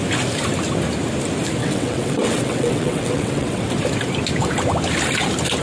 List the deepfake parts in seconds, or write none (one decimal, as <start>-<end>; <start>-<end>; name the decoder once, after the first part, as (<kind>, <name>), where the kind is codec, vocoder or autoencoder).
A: 1.6-3.7 (vocoder, WaveNeXt)